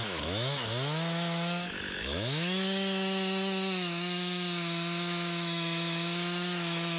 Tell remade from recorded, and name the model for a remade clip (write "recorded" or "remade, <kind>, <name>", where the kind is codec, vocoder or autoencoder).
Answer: remade, autoencoder, DAC-VAE